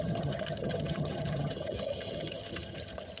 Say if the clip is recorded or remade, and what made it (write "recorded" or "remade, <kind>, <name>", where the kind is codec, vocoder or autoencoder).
remade, vocoder, HiFi-GAN